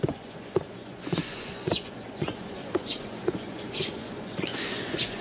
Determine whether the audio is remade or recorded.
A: remade